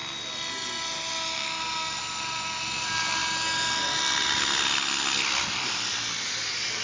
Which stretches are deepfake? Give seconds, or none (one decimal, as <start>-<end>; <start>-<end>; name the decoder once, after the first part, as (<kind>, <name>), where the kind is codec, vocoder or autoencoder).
none